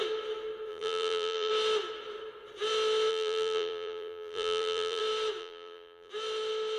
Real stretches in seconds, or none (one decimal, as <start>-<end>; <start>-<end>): 0.0-0.7; 1.5-3.1; 5.0-5.4; 6.1-6.8